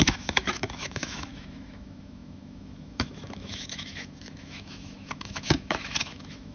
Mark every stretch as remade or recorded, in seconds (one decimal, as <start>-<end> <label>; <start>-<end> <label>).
0.0-6.5 remade